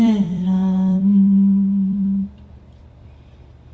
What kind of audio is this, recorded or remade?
remade